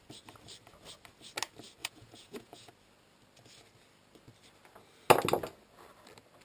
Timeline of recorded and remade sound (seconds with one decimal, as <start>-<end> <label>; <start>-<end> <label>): 0.0-1.8 recorded; 1.8-2.7 remade; 2.7-6.4 recorded